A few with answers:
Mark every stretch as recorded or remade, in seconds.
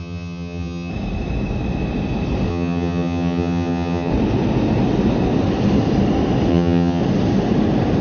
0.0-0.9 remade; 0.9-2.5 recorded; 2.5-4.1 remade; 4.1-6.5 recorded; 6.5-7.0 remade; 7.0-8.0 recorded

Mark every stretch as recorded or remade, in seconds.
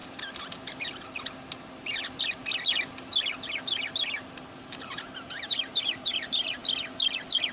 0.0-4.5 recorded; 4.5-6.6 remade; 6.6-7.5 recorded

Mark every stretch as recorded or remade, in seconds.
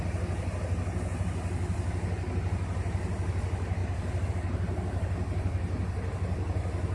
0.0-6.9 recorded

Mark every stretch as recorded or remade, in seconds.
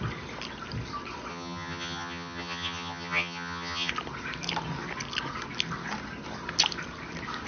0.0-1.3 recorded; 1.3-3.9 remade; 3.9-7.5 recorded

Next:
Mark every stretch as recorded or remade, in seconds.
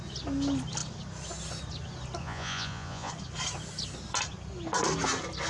0.0-2.2 recorded; 2.2-3.1 remade; 3.1-5.5 recorded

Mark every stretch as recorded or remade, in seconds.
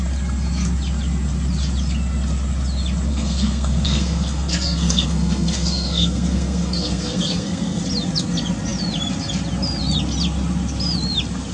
0.0-3.1 recorded; 3.1-7.8 remade; 7.8-11.5 recorded